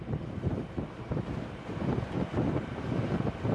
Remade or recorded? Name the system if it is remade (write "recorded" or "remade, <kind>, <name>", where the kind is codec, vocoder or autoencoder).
recorded